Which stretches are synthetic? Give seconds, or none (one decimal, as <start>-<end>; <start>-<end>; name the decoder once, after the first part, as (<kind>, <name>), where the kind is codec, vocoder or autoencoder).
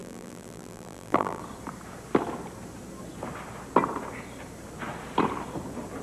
0.0-1.4 (vocoder, BigVGAN v2)